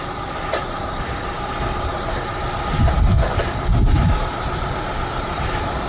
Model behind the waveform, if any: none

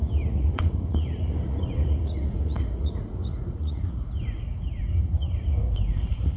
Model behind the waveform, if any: vocoder, Vocos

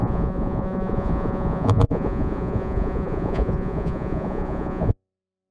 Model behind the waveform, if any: vocoder, Vocos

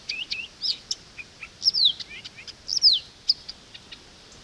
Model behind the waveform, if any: none